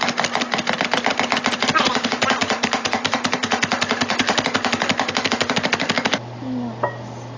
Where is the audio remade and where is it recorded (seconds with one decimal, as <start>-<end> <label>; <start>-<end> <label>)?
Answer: 0.0-1.7 recorded; 1.7-3.6 remade; 3.6-7.4 recorded